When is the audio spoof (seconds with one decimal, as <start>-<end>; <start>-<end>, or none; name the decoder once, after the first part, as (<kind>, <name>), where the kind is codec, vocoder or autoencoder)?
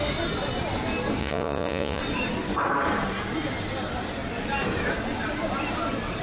1.2-2.0 (vocoder, Vocos)